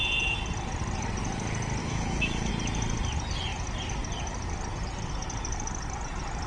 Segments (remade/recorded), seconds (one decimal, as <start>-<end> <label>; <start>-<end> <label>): 0.0-1.8 recorded; 1.8-2.5 remade; 2.5-6.5 recorded